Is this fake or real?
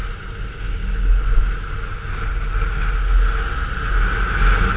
real